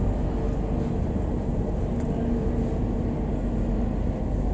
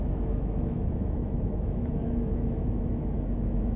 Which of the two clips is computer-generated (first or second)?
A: second